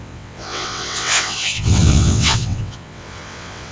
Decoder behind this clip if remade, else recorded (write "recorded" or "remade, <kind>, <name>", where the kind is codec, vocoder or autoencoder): remade, vocoder, WaveNeXt